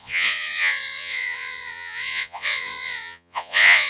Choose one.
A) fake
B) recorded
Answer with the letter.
A